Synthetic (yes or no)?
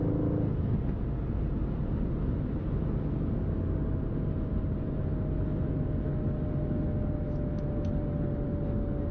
no